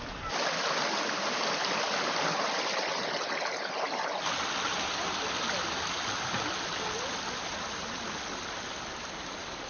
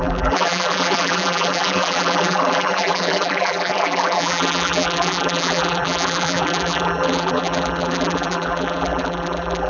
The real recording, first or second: first